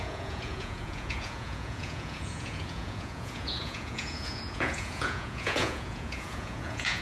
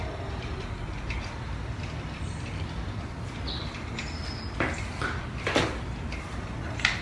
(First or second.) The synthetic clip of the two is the first